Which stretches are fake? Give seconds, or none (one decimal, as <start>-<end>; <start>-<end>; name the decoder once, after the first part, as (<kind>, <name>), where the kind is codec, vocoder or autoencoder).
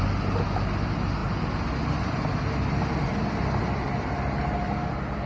none